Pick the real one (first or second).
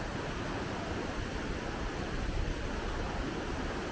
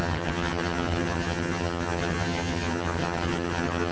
first